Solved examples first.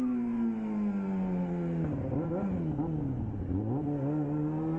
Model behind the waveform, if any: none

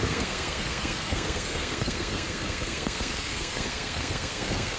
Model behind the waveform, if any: codec, SNAC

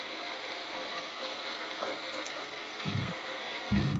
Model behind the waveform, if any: codec, SNAC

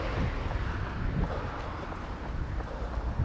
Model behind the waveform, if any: none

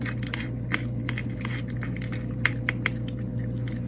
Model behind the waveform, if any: none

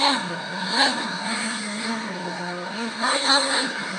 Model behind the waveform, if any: codec, SNAC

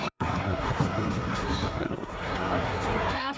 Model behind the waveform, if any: codec, SNAC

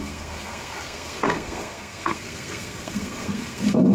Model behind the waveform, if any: codec, SNAC